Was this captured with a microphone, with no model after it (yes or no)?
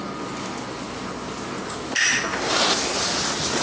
yes